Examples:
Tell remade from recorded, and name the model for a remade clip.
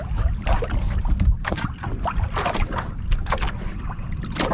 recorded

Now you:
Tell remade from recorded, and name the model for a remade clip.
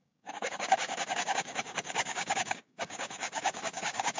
remade, codec, DAC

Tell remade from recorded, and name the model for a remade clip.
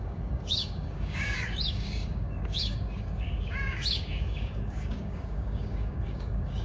remade, codec, DAC